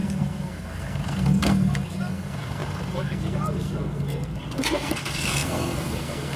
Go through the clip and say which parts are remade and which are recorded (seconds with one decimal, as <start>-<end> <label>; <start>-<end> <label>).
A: 0.0-6.4 remade